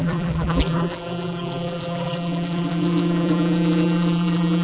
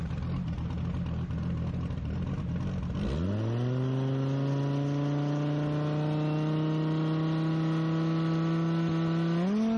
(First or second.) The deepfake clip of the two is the first